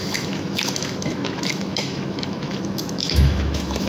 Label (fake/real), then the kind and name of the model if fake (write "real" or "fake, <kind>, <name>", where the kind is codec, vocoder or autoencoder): fake, autoencoder, DAC-VAE